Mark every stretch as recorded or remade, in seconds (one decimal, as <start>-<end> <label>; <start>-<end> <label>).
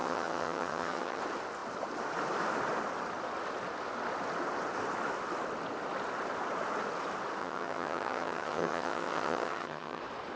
0.0-1.2 remade; 1.2-7.4 recorded; 7.4-10.0 remade; 10.0-10.4 recorded